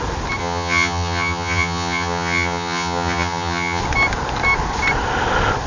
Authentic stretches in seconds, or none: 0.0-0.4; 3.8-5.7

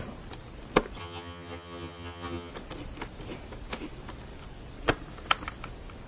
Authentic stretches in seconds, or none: 0.0-1.0; 2.5-6.1

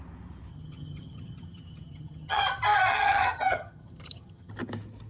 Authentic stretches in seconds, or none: 0.0-0.5; 2.4-2.9; 4.5-5.1

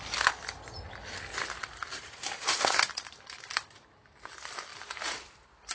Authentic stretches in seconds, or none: 0.0-5.7

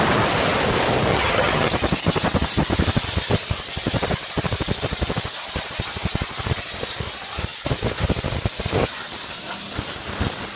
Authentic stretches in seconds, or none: 0.0-1.1; 1.7-10.6

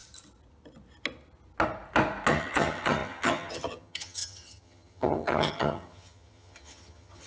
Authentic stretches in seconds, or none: 0.0-2.3

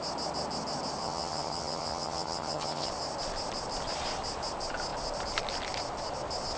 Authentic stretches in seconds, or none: 0.0-1.0; 2.9-6.6